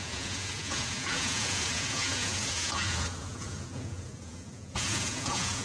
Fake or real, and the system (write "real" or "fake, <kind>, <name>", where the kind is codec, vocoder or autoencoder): fake, vocoder, Vocos